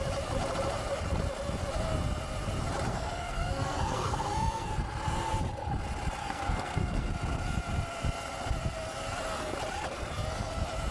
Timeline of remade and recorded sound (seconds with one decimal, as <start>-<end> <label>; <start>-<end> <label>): 0.0-2.9 recorded; 2.9-4.7 remade; 4.7-6.2 recorded; 6.2-7.1 remade; 7.1-10.9 recorded